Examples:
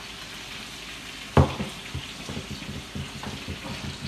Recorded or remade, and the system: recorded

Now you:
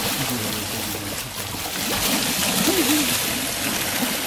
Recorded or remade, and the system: recorded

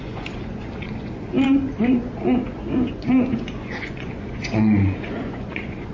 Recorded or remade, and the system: remade, vocoder, Vocos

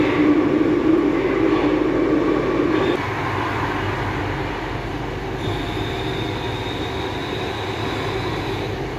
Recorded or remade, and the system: recorded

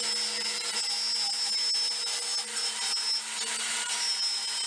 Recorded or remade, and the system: recorded